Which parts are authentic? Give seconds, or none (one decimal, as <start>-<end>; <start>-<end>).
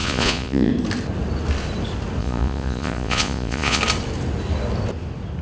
0.7-2.2; 3.8-5.4